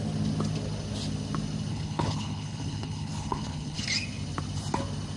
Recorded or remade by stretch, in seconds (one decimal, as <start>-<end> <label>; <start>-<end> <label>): 0.0-1.7 recorded; 1.7-3.8 remade; 3.8-5.2 recorded